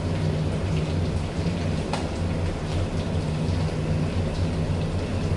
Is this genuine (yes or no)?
yes